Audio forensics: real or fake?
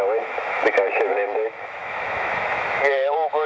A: fake